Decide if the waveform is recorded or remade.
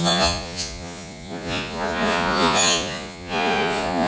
remade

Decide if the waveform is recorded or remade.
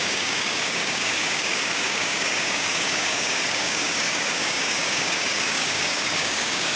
remade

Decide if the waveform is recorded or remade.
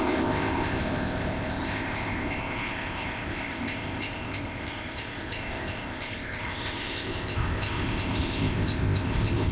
remade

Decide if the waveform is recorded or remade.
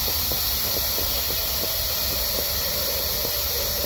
recorded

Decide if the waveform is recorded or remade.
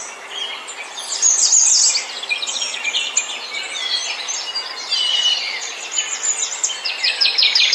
recorded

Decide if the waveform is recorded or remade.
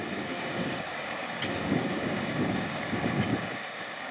remade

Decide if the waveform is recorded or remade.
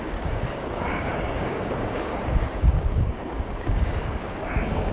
remade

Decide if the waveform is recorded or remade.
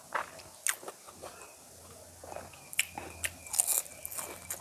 recorded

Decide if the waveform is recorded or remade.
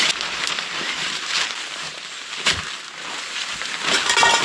recorded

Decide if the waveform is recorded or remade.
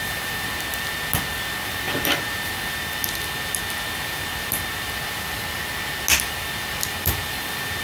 recorded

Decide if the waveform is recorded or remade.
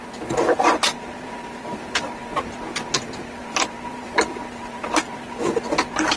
recorded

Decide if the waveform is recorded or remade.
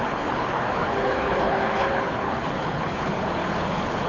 remade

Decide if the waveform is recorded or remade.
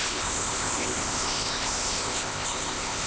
remade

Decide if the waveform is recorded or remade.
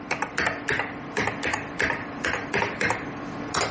recorded